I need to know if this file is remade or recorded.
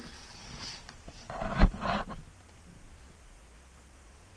recorded